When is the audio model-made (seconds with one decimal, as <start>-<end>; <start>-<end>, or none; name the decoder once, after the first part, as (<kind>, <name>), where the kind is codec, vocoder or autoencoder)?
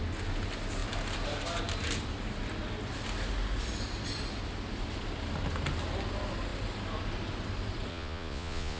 7.9-8.8 (vocoder, Vocos)